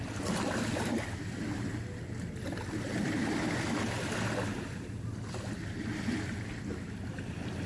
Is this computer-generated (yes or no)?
no